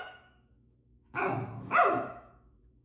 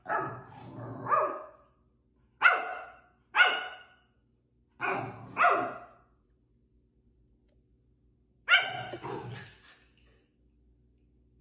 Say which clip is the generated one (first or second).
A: first